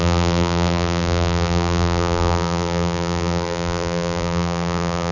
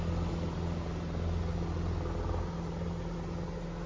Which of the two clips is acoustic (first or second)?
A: second